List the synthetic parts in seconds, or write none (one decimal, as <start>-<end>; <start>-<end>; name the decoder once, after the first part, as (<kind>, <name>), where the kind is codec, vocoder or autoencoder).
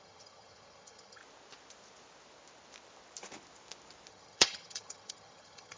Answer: 0.0-1.2 (vocoder, HiFi-GAN); 4.1-5.8